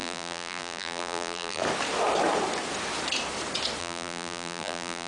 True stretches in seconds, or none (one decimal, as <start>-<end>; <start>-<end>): 1.6-3.8